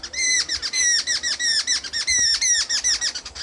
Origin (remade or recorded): recorded